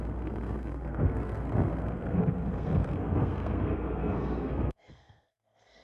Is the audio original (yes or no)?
no